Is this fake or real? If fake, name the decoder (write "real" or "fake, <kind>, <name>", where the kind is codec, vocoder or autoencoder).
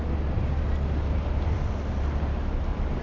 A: real